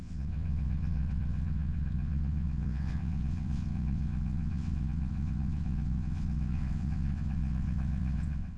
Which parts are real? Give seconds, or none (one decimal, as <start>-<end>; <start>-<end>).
none